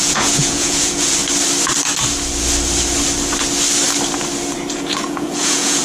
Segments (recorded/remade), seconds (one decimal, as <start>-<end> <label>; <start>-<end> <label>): 0.0-1.2 remade; 1.2-4.7 recorded; 4.7-5.8 remade